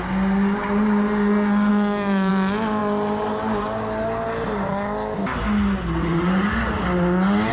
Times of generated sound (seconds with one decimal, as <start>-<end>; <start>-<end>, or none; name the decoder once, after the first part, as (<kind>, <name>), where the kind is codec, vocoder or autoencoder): 1.7-2.3 (autoencoder, DAC-VAE)